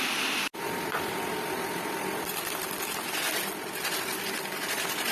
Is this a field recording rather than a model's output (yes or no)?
yes